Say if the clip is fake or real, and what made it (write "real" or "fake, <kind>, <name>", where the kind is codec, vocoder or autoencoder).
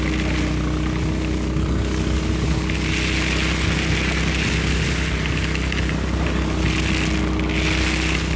real